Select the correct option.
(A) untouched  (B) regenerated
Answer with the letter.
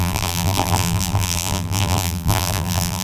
B